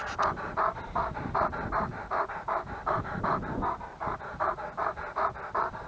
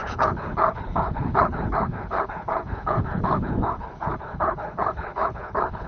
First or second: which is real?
first